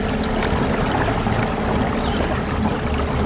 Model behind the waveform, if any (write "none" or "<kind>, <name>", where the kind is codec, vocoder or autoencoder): none